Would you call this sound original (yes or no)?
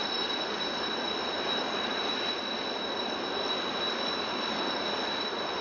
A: yes